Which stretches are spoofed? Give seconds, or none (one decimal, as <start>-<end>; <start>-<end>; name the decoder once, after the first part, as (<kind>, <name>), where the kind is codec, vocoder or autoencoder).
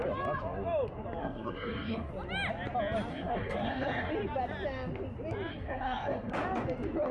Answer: 1.2-2.1 (codec, SNAC); 3.1-4.1; 5.5-6.3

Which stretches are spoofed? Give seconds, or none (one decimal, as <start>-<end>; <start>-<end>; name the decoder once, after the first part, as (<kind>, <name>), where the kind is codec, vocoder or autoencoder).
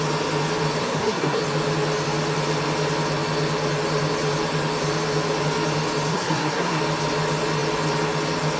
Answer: 0.8-1.4 (codec, SNAC); 6.1-6.8